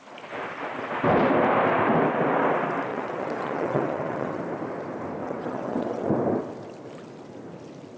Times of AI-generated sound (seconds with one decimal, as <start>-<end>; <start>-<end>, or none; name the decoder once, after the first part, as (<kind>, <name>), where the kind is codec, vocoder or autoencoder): 2.9-4.4 (vocoder, WaveNeXt); 5.2-6.1